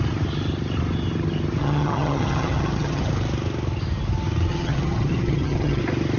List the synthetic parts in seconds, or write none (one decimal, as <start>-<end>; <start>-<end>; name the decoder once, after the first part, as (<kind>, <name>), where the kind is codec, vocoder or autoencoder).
1.6-3.1 (vocoder, HiFi-GAN); 4.5-5.8